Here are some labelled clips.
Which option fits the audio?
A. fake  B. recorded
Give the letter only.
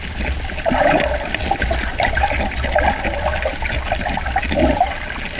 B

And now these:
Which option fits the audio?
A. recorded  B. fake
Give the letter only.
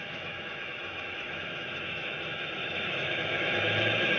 B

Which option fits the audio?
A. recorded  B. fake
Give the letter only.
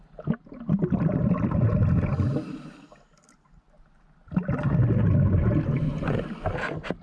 A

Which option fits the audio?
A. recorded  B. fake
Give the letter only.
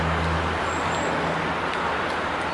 A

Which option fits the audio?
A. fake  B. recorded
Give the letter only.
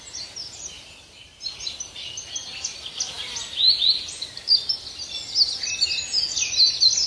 B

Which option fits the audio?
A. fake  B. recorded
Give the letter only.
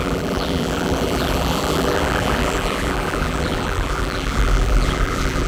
A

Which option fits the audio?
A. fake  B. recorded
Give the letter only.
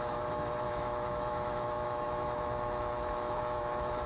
A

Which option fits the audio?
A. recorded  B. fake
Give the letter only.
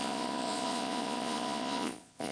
B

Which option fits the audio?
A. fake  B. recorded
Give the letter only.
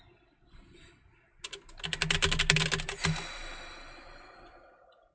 B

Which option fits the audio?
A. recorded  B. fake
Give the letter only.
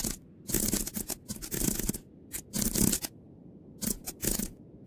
A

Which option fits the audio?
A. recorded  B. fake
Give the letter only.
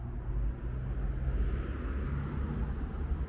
A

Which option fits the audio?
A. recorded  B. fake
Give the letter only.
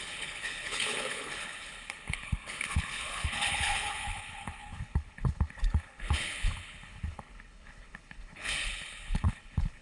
B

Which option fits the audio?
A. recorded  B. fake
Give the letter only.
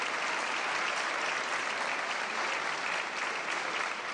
A